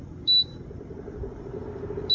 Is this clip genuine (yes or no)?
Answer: yes